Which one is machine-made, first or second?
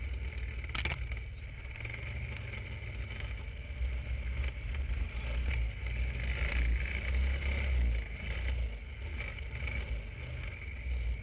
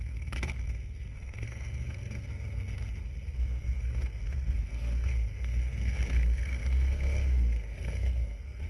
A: second